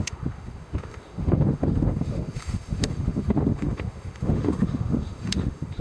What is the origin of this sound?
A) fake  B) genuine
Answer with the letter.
A